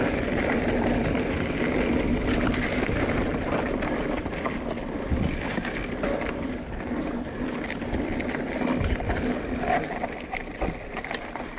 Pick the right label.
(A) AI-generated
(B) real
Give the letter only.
B